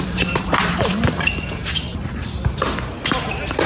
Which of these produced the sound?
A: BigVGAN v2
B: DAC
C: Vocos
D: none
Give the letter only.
A